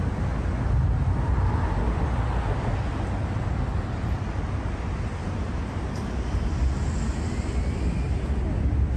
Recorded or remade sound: recorded